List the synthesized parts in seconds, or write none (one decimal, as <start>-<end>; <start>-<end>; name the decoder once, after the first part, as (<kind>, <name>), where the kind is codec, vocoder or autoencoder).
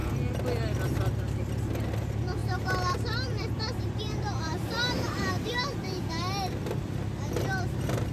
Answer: 2.4-6.1 (vocoder, BigVGAN v2)